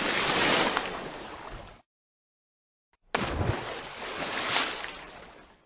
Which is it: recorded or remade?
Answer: recorded